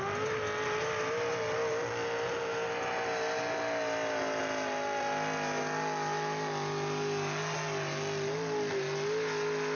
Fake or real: real